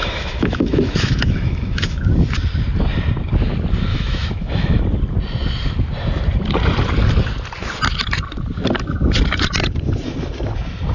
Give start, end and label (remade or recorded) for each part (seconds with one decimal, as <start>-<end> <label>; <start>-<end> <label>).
0.0-2.1 remade; 2.1-3.9 recorded; 3.9-4.8 remade; 4.8-10.9 recorded